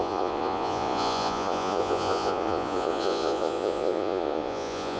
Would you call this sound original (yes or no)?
no